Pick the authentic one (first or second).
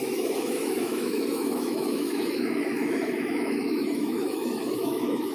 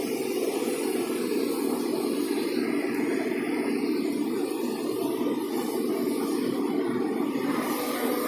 second